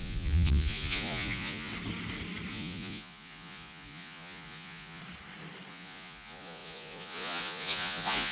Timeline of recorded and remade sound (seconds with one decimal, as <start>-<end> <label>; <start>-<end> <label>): 0.0-1.7 remade; 1.7-2.5 recorded; 2.5-5.0 remade; 5.0-5.7 recorded; 5.7-8.3 remade